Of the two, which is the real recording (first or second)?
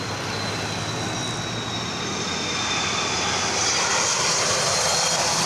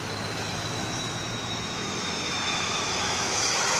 first